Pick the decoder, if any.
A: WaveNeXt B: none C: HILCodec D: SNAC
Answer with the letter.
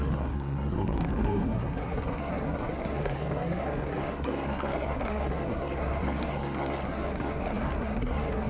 D